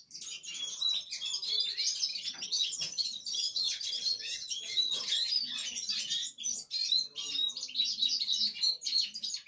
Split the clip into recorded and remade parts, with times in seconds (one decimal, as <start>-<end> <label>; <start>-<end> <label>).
0.0-2.1 recorded; 2.1-5.3 remade; 5.3-9.5 recorded